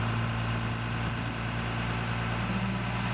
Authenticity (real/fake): real